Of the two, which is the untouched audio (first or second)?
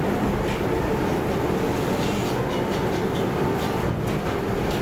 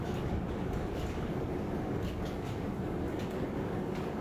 first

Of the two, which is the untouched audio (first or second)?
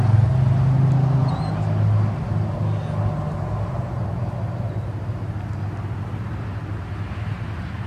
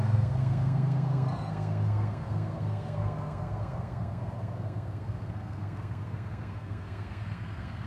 first